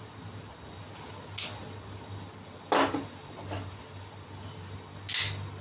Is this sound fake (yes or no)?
no